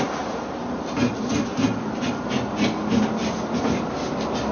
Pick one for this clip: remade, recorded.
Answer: recorded